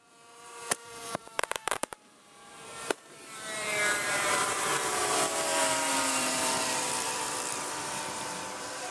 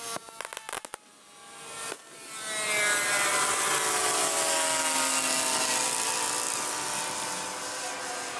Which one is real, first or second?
second